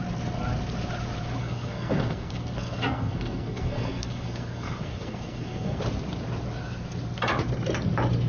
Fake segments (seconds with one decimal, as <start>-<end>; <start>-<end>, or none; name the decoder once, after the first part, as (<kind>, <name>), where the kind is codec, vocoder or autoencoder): 1.4-5.8 (codec, SNAC)